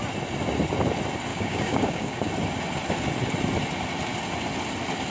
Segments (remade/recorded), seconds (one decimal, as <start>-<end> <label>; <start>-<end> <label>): 0.0-1.3 recorded; 1.3-2.3 remade; 2.3-5.1 recorded